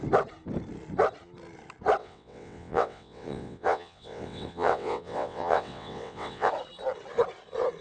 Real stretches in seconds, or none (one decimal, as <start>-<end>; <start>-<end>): 0.0-2.0; 6.5-7.8